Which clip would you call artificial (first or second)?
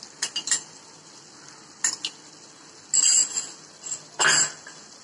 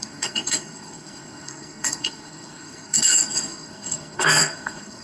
second